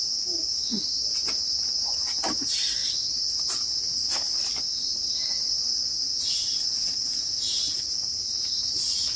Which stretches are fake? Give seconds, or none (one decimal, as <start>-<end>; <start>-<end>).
0.0-2.8; 3.4-4.0; 6.2-9.2